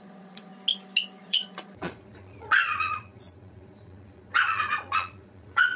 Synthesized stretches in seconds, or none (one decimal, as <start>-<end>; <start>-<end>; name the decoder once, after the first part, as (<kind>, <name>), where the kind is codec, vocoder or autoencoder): 0.0-0.5 (vocoder, Vocos); 1.2-5.8

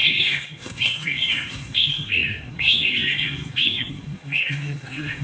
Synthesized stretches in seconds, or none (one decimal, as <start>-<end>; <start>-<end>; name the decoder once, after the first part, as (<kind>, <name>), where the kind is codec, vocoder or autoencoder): 0.0-5.2 (codec, SNAC)

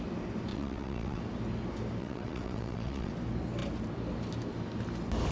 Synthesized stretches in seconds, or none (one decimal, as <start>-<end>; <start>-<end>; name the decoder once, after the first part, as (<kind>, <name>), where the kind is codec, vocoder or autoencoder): 0.5-1.2 (vocoder, WaveNeXt); 2.0-3.1

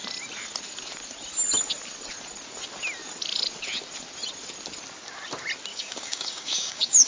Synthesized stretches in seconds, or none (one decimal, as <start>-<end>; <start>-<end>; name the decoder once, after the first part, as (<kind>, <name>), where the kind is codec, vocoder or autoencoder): 5.7-7.1 (codec, DAC)